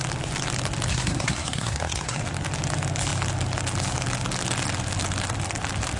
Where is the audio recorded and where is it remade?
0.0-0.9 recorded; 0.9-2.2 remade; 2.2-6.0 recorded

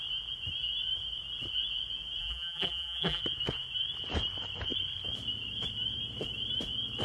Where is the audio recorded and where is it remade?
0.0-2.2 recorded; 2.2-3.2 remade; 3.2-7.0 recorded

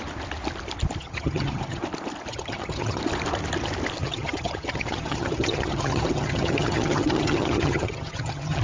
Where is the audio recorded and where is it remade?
0.0-1.0 recorded; 1.0-1.8 remade; 1.8-2.3 recorded; 2.3-3.0 remade; 3.0-4.0 recorded; 4.0-8.6 remade

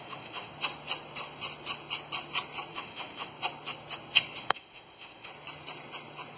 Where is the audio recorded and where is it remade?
0.0-0.5 remade; 0.5-2.7 recorded; 2.7-3.3 remade; 3.3-4.4 recorded; 4.4-5.3 remade; 5.3-6.4 recorded

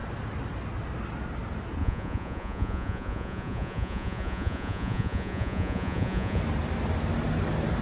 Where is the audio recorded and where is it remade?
0.0-1.8 recorded; 1.8-6.4 remade; 6.4-7.8 recorded